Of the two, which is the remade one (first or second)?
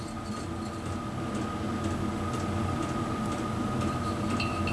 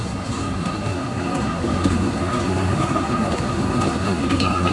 second